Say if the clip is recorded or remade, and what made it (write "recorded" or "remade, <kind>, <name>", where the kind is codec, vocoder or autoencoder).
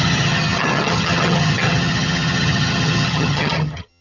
remade, vocoder, HiFi-GAN